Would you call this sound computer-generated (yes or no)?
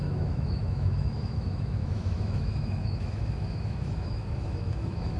yes